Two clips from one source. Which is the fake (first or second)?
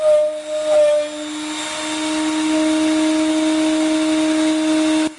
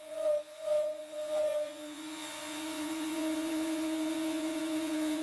second